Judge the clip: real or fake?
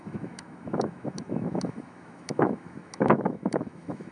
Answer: fake